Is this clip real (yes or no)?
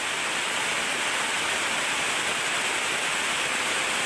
yes